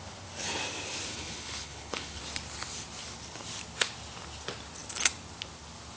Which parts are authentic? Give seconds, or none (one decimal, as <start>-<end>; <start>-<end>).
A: 0.0-1.1; 2.2-6.0